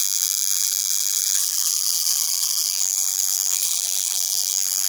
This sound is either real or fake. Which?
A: fake